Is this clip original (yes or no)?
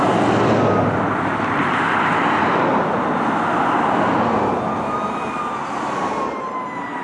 yes